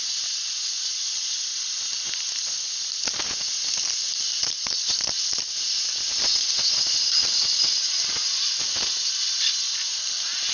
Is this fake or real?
real